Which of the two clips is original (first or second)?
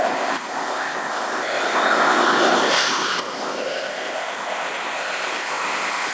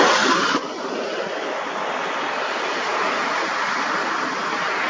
second